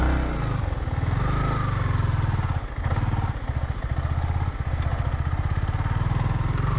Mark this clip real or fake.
real